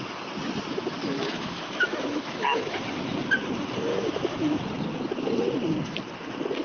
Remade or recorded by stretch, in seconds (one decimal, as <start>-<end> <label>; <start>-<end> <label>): 0.0-1.0 recorded; 1.0-2.8 remade; 2.8-3.9 recorded; 3.9-4.6 remade; 4.6-6.6 recorded